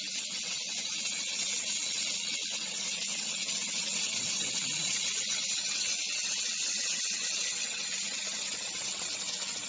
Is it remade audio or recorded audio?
remade